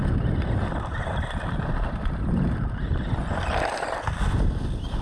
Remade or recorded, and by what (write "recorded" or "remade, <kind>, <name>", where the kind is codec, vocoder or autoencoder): recorded